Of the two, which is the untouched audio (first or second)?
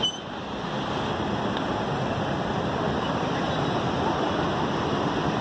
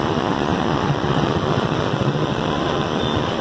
first